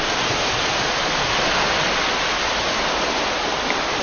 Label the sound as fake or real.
real